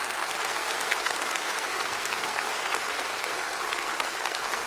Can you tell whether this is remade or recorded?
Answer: remade